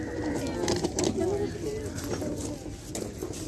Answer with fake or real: real